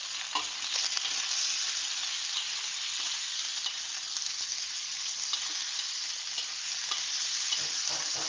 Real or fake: real